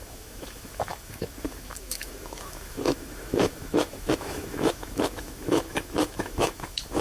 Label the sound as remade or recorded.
remade